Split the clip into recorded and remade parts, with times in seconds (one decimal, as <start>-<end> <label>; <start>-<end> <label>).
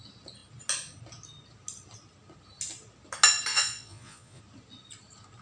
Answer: 0.0-3.5 recorded; 3.5-4.4 remade; 4.4-5.4 recorded